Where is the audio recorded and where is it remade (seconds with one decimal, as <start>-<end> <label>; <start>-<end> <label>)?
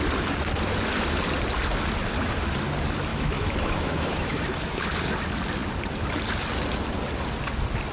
0.0-3.1 recorded; 3.1-4.9 remade; 4.9-7.9 recorded